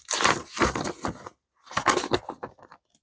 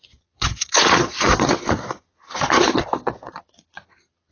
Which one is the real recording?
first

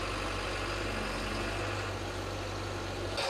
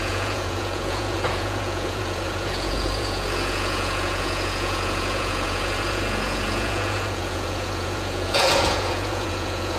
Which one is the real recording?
first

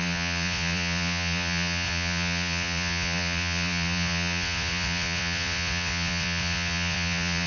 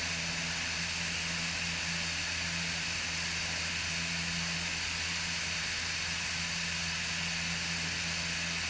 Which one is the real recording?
second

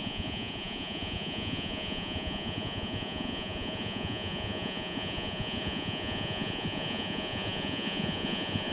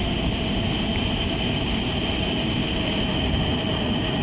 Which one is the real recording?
second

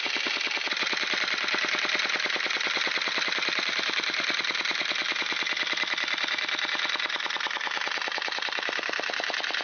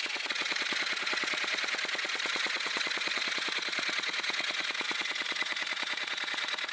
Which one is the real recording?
first